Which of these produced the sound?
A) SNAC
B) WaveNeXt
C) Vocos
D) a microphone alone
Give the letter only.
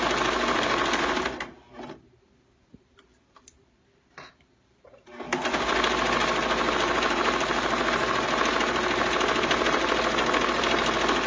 D